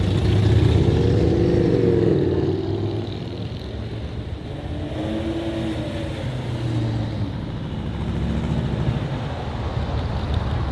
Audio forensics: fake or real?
real